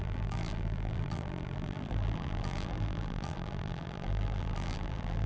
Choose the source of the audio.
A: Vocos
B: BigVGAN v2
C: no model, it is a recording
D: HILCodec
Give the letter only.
B